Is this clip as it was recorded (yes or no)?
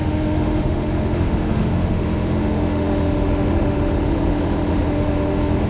no